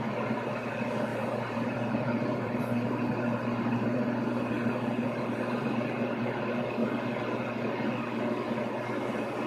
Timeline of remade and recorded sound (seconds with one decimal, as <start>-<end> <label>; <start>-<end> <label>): 0.0-1.1 recorded; 1.1-5.7 remade; 5.7-9.5 recorded